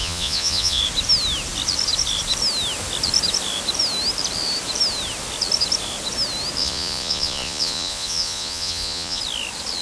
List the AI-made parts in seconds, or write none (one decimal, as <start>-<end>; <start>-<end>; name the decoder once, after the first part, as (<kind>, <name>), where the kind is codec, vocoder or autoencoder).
0.0-0.8 (vocoder, Vocos); 6.6-9.2